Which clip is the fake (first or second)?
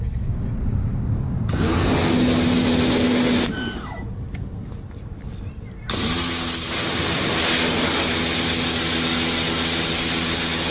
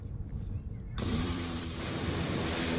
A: second